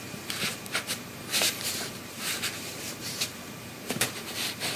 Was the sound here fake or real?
fake